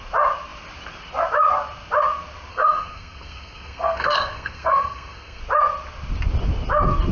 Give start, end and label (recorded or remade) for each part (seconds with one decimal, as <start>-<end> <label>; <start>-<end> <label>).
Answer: 0.0-2.5 recorded; 2.5-5.4 remade; 5.4-7.1 recorded